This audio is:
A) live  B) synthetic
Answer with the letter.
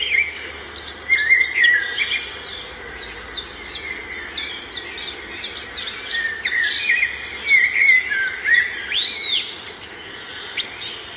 A